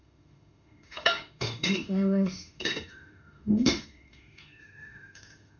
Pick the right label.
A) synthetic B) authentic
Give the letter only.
A